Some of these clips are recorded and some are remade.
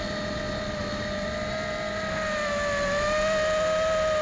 recorded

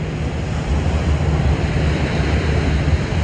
recorded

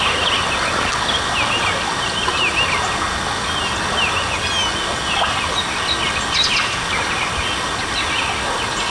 recorded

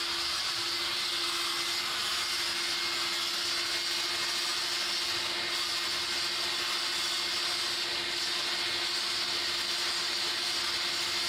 recorded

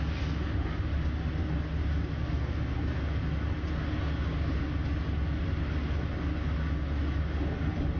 recorded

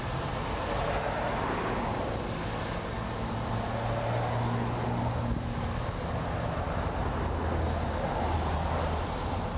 recorded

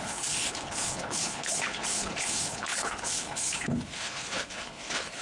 remade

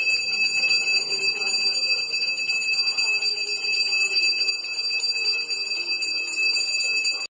recorded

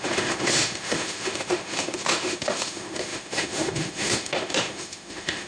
remade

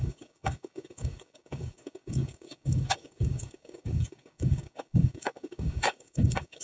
remade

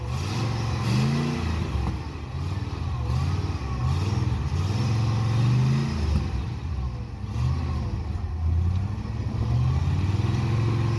recorded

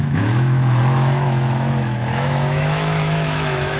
remade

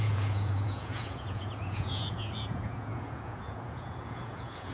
remade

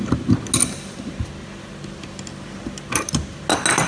recorded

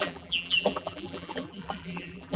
remade